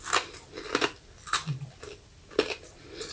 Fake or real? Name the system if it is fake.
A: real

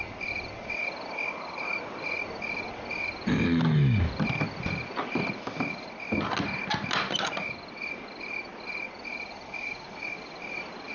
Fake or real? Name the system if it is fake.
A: real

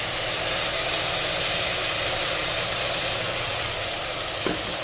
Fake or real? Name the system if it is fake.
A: real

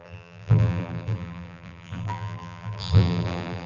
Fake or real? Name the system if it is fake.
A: fake, vocoder, BigVGAN v2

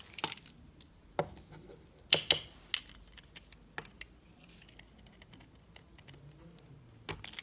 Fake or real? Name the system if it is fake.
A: real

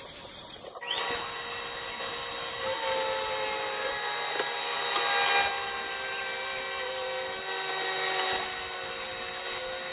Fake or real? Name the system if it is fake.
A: real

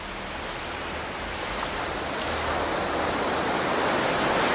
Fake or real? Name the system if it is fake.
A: real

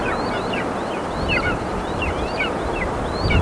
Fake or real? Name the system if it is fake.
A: real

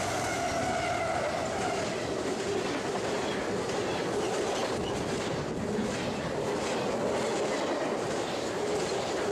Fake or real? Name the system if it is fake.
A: real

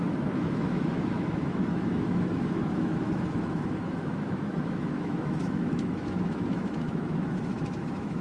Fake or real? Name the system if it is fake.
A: fake, autoencoder, DAC-VAE